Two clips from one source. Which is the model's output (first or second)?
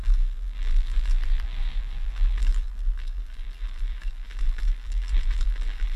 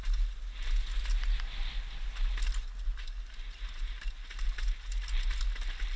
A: first